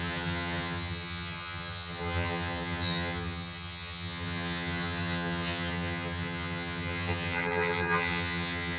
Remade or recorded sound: remade